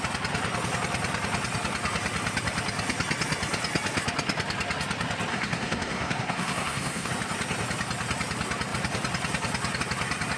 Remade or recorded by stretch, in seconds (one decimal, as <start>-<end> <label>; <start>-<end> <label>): 0.0-5.3 recorded; 5.3-7.1 remade; 7.1-10.4 recorded